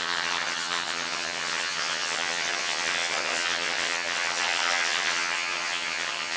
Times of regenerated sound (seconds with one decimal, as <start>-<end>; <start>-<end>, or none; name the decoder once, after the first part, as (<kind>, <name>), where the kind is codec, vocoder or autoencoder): 0.0-6.4 (vocoder, HiFi-GAN)